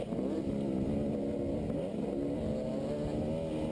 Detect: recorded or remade recorded